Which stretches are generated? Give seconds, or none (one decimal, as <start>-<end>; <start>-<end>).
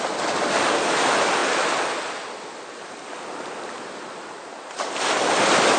none